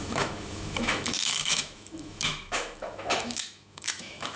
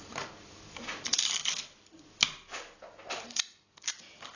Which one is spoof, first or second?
first